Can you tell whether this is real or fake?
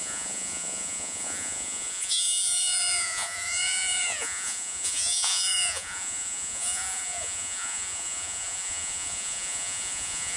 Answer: fake